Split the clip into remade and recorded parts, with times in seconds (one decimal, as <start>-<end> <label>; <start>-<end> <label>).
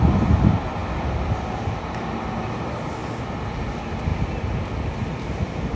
0.0-5.8 recorded